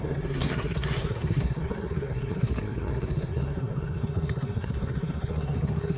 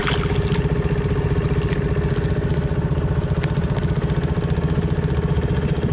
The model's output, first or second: first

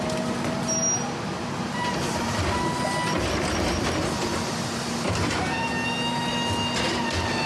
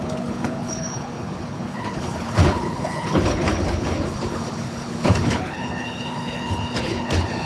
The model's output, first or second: second